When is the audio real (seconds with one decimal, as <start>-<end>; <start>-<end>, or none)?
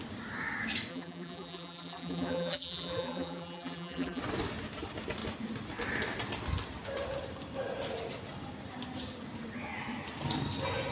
0.0-0.9; 4.2-10.9